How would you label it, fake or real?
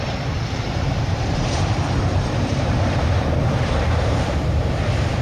fake